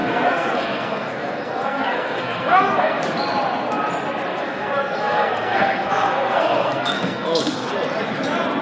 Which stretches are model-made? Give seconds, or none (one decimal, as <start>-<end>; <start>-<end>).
0.0-3.0; 4.3-7.7